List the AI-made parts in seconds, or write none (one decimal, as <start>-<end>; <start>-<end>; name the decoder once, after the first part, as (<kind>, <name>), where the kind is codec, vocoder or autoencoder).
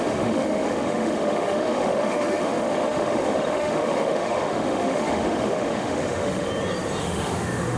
0.0-6.5 (autoencoder, DAC-VAE); 7.0-7.8